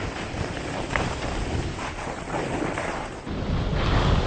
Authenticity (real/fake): real